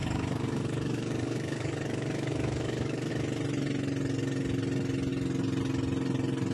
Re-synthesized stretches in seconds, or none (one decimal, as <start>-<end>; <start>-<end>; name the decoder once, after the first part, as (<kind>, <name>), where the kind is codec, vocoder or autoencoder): 0.0-3.1 (codec, DAC)